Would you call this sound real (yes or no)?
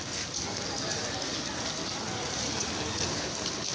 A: yes